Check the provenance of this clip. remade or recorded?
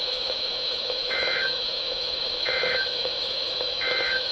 remade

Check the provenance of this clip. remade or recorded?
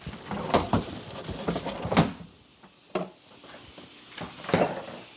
recorded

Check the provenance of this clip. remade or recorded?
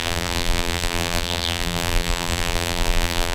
remade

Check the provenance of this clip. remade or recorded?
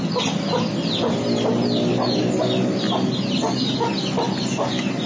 recorded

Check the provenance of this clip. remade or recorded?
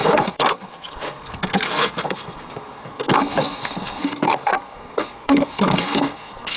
remade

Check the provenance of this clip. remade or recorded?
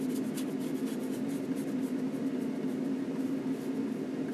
recorded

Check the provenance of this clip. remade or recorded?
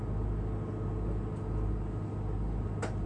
recorded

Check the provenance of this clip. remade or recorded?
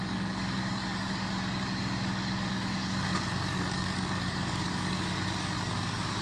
remade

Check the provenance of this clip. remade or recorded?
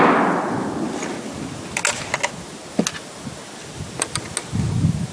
recorded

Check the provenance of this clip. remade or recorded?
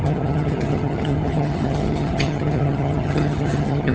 remade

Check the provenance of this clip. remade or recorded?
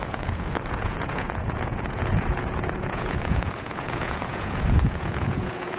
remade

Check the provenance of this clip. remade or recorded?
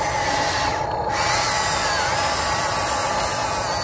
recorded